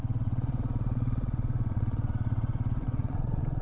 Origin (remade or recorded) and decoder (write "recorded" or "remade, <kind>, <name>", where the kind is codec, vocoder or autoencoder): remade, vocoder, WaveNeXt